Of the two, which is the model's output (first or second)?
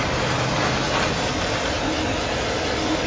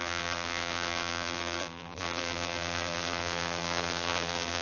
second